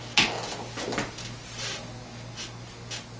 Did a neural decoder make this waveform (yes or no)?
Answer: no